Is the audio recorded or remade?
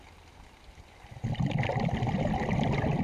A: recorded